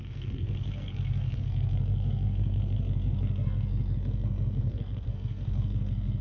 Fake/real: fake